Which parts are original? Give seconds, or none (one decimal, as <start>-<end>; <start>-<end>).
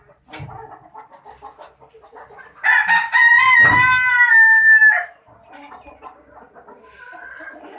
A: 0.0-7.8